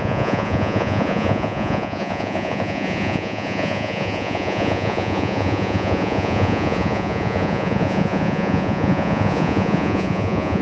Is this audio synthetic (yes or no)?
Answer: yes